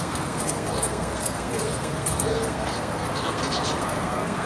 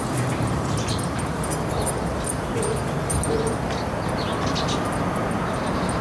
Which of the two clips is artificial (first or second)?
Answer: first